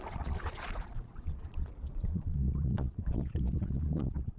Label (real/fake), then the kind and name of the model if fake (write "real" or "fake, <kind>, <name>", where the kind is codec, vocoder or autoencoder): fake, vocoder, Vocos